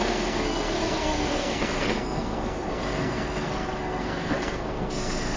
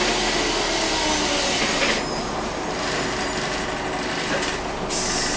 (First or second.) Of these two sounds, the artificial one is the first